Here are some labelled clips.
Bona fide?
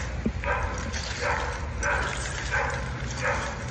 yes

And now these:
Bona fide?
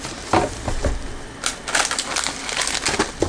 yes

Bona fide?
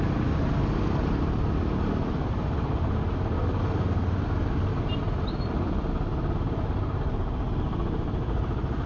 yes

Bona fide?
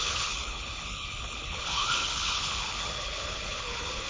no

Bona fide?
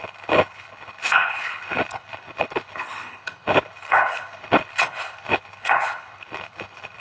no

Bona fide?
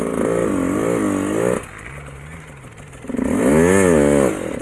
yes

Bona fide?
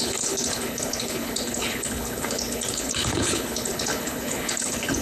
no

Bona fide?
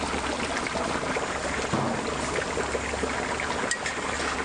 yes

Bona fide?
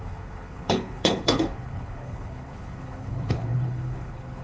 no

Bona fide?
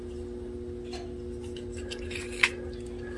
yes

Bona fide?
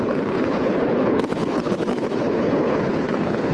no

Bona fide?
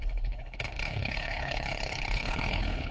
no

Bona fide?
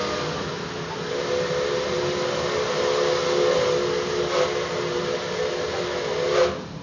yes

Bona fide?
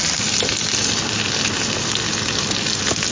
yes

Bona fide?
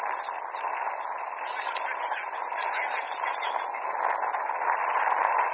yes